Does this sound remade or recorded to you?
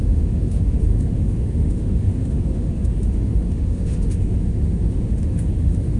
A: remade